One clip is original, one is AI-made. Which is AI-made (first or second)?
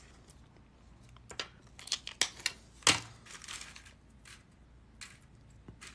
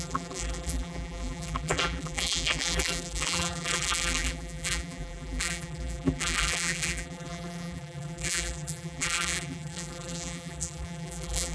second